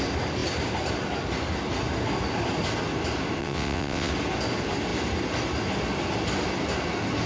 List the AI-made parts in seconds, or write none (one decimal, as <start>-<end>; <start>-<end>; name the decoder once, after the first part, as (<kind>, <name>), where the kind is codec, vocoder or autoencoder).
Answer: 3.4-4.1 (vocoder, WaveNeXt)